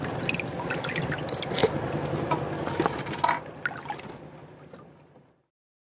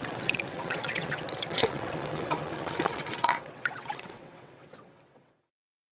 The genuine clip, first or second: first